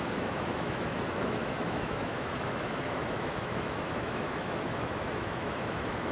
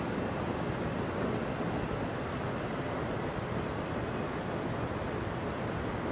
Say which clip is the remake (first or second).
first